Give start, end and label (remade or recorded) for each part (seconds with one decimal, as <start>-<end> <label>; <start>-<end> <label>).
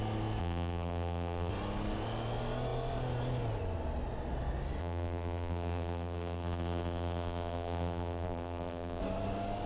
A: 0.0-0.4 recorded; 0.4-1.5 remade; 1.5-4.8 recorded; 4.8-9.0 remade; 9.0-9.7 recorded